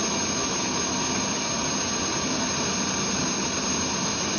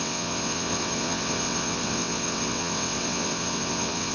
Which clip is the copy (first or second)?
second